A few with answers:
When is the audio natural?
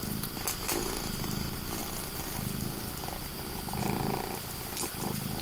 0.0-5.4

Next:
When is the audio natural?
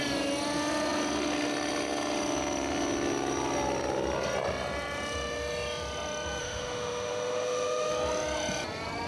0.0-6.4; 7.9-9.1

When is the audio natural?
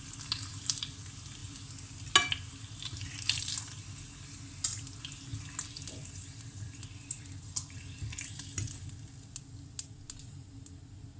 0.0-11.2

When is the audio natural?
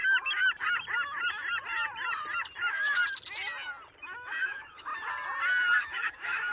0.0-2.6; 3.0-4.0; 4.9-5.8